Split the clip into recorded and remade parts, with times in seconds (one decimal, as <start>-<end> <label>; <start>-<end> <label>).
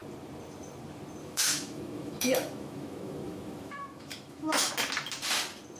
0.0-1.2 recorded; 1.2-4.7 remade; 4.7-5.8 recorded